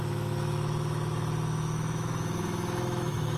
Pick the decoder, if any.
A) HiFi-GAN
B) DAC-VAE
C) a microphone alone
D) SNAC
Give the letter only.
B